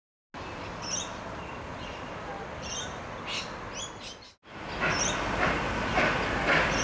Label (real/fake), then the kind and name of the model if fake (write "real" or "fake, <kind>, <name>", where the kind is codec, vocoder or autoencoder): real